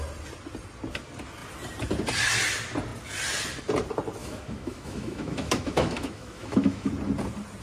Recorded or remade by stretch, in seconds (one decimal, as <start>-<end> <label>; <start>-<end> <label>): 0.0-4.2 recorded; 4.2-6.9 remade; 6.9-7.6 recorded